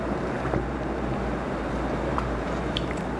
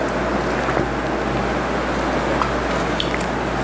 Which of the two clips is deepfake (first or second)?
first